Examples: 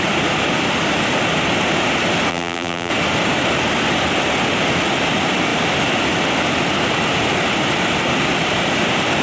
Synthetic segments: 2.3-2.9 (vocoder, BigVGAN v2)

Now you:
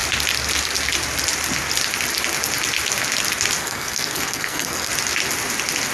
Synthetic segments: 3.6-4.9 (codec, SNAC)

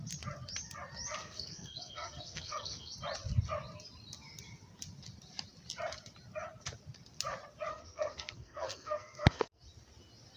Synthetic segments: 1.2-2.9 (codec, SNAC); 7.7-9.6

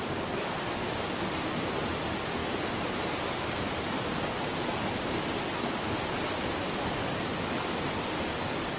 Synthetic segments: none

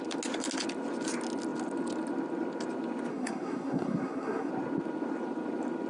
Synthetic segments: 3.1-4.5 (codec, SNAC)

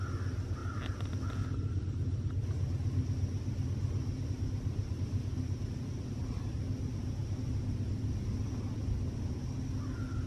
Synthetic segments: none